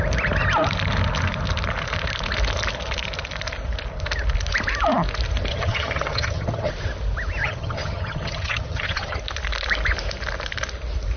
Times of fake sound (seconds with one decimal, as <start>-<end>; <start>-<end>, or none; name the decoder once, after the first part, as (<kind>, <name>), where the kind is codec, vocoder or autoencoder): 5.5-6.7 (vocoder, HiFi-GAN); 7.4-9.2